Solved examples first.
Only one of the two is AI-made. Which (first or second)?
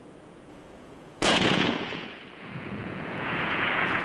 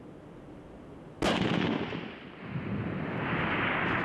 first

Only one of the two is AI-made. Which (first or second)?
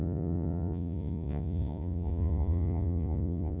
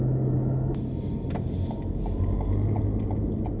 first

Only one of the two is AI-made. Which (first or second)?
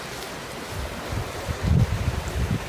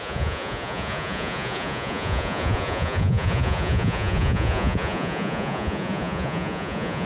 second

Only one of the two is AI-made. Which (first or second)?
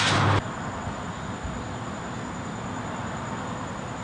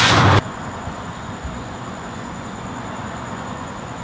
second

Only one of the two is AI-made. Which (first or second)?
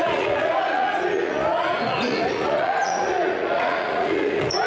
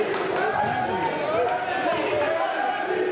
first